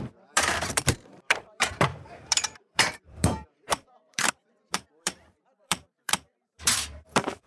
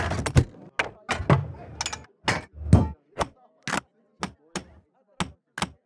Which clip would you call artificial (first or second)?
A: first